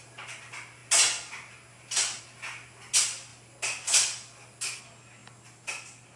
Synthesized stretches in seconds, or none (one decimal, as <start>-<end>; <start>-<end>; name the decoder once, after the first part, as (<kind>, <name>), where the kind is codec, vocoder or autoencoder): none